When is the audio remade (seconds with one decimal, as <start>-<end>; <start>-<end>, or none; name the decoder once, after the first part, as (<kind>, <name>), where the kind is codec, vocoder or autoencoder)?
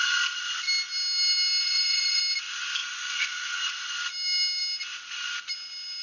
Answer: 1.6-2.2 (vocoder, Vocos); 2.8-3.7